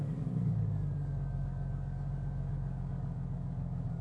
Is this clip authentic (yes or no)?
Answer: no